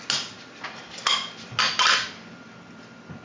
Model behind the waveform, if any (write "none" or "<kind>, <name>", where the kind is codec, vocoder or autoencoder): none